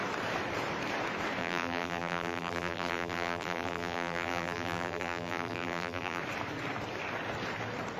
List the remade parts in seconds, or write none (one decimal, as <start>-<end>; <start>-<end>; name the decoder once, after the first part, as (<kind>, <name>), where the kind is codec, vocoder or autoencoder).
1.4-6.2 (vocoder, BigVGAN v2)